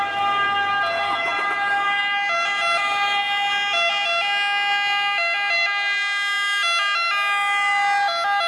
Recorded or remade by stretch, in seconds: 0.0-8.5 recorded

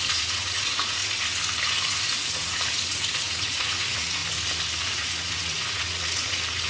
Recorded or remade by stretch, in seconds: 0.0-1.0 remade; 1.0-1.8 recorded; 1.8-4.2 remade; 4.2-4.7 recorded; 4.7-6.7 remade

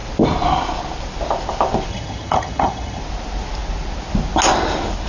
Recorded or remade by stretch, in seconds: 0.0-1.9 recorded; 1.9-3.0 remade; 3.0-5.1 recorded

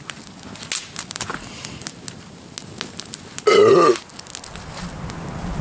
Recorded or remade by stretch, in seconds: 0.0-5.6 recorded

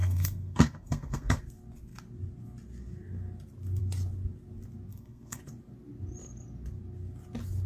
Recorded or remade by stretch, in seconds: 0.0-1.4 remade; 1.4-4.9 recorded; 4.9-5.4 remade; 5.4-7.7 recorded

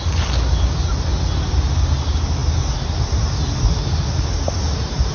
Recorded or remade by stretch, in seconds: 0.0-5.1 recorded